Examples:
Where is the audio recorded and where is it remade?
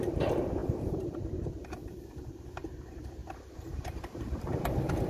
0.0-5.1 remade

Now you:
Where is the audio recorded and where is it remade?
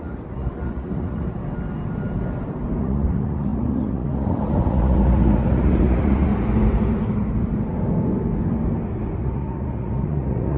0.0-1.4 remade; 1.4-2.8 recorded; 2.8-6.3 remade; 6.3-9.2 recorded; 9.2-10.6 remade